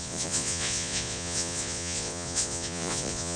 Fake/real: fake